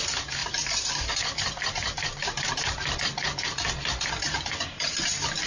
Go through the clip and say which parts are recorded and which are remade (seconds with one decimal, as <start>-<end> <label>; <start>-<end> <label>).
0.0-0.4 recorded; 0.4-3.0 remade; 3.0-5.5 recorded